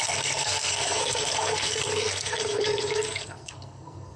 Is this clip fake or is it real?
fake